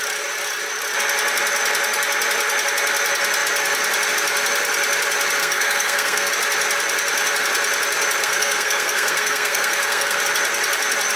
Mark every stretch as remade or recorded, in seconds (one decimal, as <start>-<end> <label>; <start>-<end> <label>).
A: 0.0-5.4 recorded; 5.4-6.3 remade; 6.3-8.2 recorded; 8.2-10.2 remade; 10.2-11.2 recorded